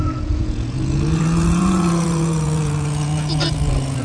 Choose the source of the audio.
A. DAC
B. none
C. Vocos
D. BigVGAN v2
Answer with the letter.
C